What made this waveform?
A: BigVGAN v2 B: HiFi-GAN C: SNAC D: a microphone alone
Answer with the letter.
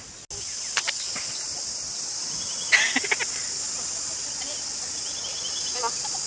D